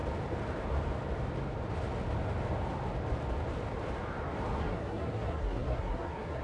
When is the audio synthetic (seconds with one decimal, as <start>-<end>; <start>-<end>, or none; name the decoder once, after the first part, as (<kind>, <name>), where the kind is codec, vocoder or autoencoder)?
4.6-6.4 (codec, SNAC)